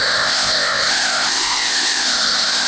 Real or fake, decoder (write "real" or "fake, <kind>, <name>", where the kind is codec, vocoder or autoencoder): fake, codec, ZipCodec